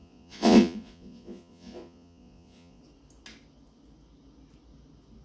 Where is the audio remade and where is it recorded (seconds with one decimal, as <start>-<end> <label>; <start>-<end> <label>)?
0.0-2.8 remade; 2.8-5.2 recorded